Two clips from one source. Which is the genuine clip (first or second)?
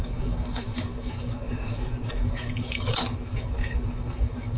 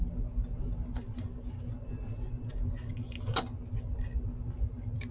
second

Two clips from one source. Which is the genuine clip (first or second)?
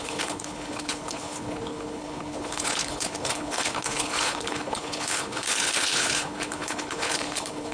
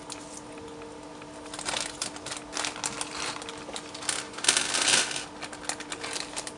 second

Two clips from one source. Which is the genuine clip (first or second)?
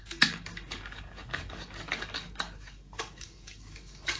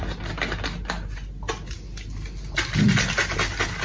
second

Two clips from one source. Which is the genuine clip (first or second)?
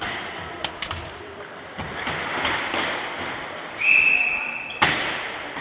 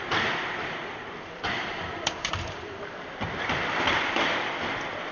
first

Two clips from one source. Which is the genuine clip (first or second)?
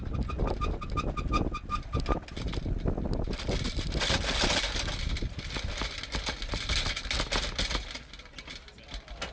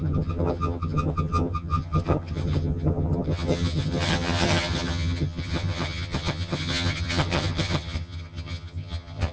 first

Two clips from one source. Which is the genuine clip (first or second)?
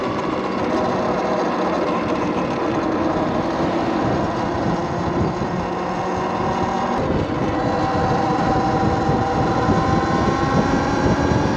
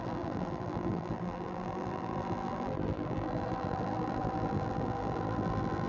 first